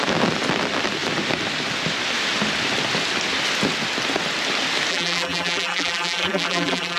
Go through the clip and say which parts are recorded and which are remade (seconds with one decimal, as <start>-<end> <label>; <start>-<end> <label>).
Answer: 0.0-4.9 recorded; 4.9-7.0 remade